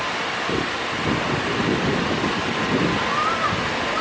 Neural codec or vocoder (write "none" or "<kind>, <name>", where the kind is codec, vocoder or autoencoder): none